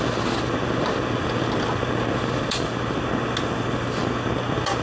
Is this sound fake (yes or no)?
no